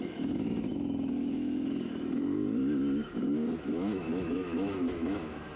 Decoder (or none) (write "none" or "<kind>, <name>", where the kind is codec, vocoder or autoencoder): autoencoder, DAC-VAE